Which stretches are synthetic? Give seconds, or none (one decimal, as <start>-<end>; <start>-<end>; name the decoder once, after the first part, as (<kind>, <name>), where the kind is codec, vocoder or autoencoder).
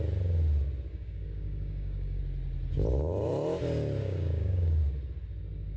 0.9-2.2 (codec, DAC); 4.0-4.8